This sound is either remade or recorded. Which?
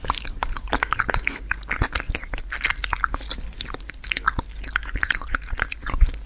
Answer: recorded